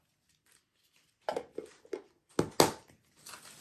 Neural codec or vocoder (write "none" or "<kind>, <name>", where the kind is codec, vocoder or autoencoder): none